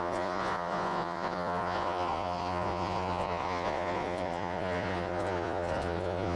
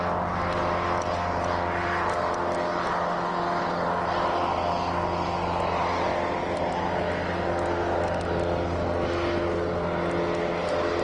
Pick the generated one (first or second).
first